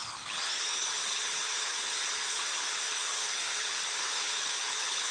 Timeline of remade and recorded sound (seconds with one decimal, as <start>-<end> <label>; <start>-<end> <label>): 0.0-5.1 remade